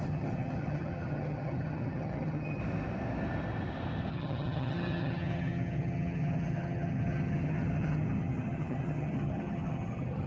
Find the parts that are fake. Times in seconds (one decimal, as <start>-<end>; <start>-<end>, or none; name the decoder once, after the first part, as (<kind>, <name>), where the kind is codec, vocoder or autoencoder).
0.0-2.6 (vocoder, HiFi-GAN); 4.1-10.3